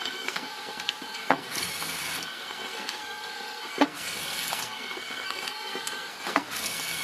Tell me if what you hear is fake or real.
fake